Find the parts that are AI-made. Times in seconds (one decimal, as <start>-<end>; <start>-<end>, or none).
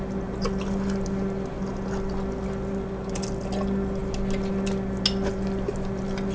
none